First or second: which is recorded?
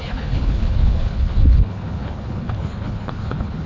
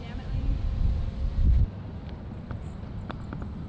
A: second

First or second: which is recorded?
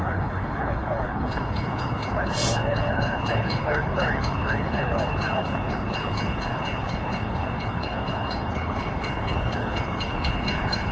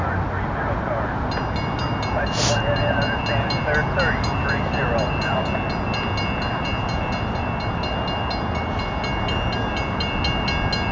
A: second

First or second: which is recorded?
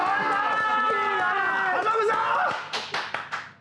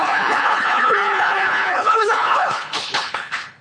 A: first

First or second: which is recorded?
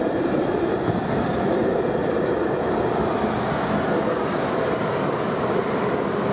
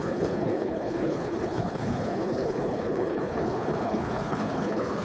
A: first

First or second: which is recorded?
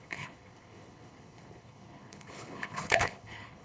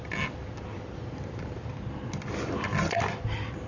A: second